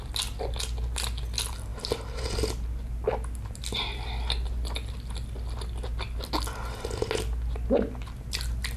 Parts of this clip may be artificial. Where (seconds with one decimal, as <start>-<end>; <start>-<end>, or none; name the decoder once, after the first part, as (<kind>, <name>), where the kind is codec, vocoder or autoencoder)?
none

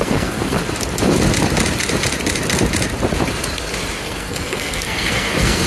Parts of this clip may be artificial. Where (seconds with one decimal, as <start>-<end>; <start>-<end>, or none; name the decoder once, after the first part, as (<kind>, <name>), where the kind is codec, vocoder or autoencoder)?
0.0-0.6 (codec, SNAC); 4.0-5.7

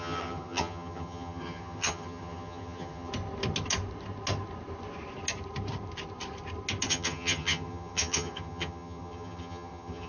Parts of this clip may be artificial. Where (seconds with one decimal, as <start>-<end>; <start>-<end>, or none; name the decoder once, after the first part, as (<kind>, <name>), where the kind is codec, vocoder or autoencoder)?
0.0-3.1 (vocoder, HiFi-GAN); 6.9-10.1